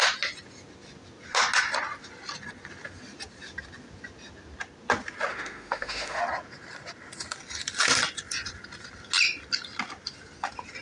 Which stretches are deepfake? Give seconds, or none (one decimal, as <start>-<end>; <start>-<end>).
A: 5.3-6.2